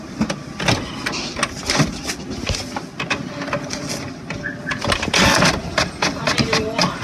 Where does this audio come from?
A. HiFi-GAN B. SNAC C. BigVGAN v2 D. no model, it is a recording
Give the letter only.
D